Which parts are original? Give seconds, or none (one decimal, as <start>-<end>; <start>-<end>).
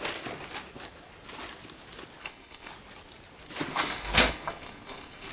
0.0-2.2; 2.7-3.7